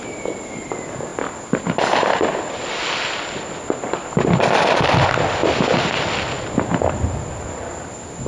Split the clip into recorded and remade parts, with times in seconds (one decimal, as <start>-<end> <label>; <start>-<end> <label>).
0.0-8.3 recorded